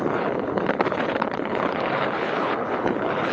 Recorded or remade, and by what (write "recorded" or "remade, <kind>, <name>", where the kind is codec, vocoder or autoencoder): remade, codec, HILCodec